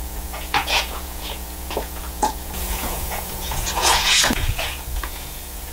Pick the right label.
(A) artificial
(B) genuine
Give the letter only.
A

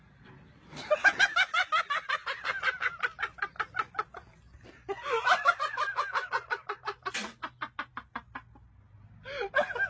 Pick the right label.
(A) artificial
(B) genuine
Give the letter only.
B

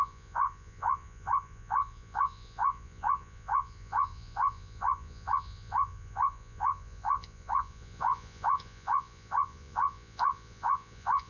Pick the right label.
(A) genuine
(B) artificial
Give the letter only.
B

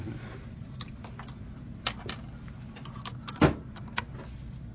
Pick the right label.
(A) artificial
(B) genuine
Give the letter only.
B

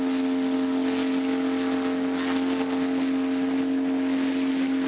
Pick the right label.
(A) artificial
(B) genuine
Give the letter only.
B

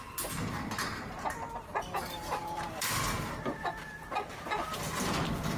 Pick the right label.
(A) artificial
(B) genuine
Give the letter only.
B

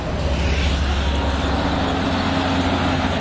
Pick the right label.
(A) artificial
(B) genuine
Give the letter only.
B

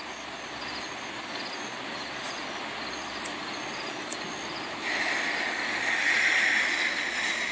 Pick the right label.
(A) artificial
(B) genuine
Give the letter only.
B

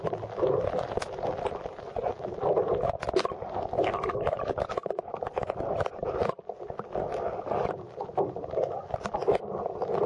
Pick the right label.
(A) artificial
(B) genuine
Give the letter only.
B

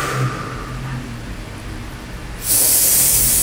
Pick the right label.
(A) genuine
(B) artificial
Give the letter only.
A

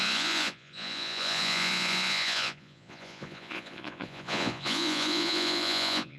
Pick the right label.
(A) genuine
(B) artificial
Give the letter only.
B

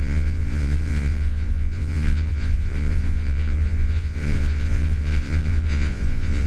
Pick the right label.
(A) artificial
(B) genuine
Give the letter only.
A